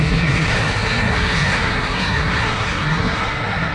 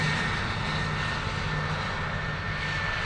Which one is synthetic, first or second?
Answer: first